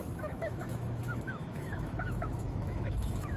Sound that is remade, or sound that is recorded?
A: remade